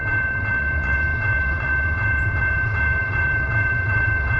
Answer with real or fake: fake